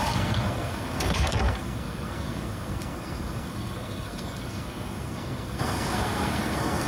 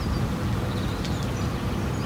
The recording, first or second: second